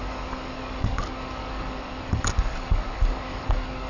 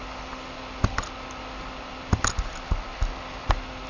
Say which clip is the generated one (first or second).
first